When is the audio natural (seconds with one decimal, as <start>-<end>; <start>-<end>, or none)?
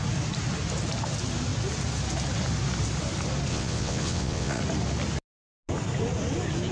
0.0-3.5; 4.6-6.7